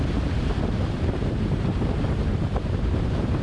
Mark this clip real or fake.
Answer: fake